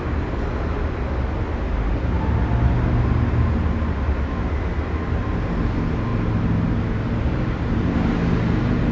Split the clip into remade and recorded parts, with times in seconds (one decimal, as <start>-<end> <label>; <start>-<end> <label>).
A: 0.0-8.9 recorded